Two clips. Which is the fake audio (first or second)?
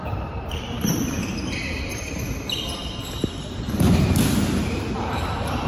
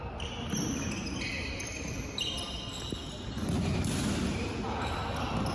first